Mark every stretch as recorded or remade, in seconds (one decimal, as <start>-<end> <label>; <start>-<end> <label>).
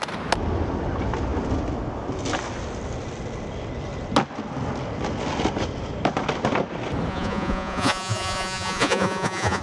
0.0-7.1 recorded; 7.1-9.6 remade